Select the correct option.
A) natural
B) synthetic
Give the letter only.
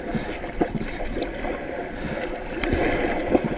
A